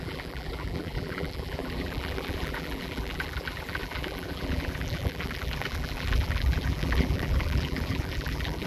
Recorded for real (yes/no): no